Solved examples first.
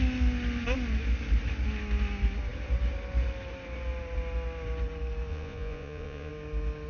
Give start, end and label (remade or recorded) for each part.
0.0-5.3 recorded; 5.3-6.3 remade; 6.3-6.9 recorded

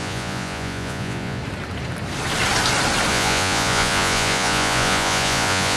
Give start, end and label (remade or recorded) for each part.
0.0-1.4 remade; 1.4-3.1 recorded; 3.1-5.8 remade

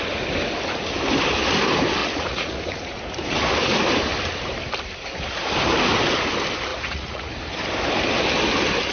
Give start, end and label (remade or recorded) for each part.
0.0-2.0 recorded; 2.0-3.0 remade; 3.0-6.7 recorded; 6.7-7.3 remade; 7.3-8.9 recorded

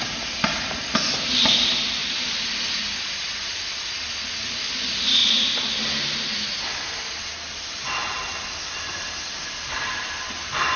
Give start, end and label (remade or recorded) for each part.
0.0-10.8 recorded

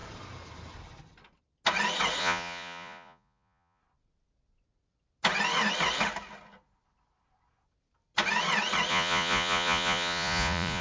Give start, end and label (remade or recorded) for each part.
0.0-2.2 recorded; 2.2-3.8 remade; 3.8-8.9 recorded; 8.9-10.8 remade

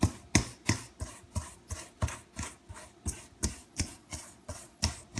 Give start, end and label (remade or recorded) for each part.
0.0-3.6 recorded; 3.6-4.8 remade; 4.8-5.2 recorded

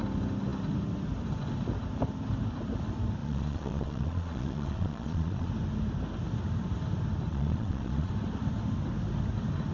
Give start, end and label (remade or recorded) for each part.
0.0-3.2 recorded; 3.2-5.5 remade; 5.5-7.3 recorded; 7.3-8.1 remade; 8.1-9.7 recorded